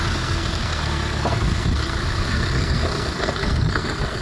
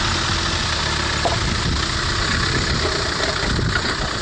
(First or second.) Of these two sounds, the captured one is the second